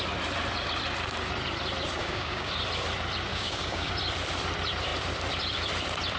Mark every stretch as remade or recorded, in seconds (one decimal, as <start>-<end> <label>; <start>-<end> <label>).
0.0-2.0 recorded; 2.0-2.5 remade; 2.5-3.3 recorded; 3.3-3.9 remade; 3.9-6.2 recorded